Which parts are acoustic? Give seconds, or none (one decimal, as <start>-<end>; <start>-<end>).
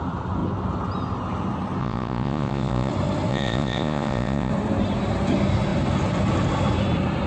0.0-1.8; 2.9-3.3; 4.5-7.3